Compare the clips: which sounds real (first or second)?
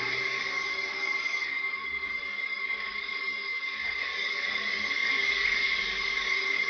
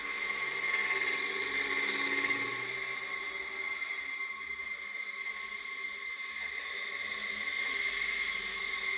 second